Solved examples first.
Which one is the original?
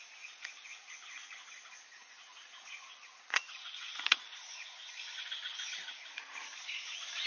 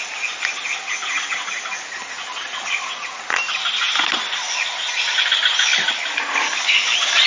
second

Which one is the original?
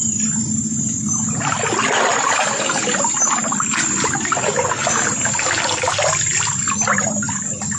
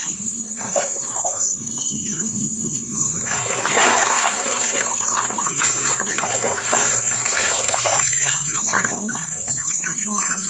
first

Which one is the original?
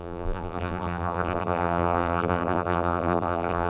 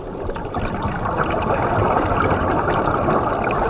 second